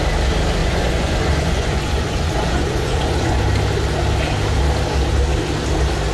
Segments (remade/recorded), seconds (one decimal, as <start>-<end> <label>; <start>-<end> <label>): 0.0-0.6 recorded; 0.6-3.4 remade; 3.4-6.1 recorded